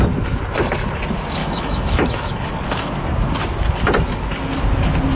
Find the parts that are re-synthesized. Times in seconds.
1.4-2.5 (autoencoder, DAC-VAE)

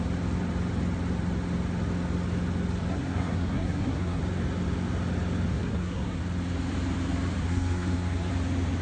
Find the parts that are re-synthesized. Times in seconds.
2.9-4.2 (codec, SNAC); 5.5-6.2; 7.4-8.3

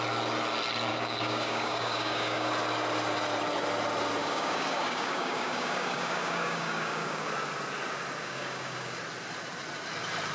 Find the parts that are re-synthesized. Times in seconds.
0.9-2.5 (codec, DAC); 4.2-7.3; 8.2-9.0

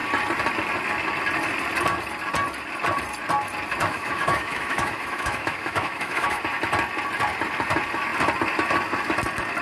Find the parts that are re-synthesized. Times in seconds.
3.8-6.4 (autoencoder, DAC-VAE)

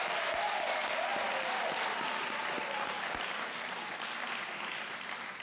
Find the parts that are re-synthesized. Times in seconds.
none